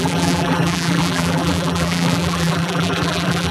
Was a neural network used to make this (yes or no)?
yes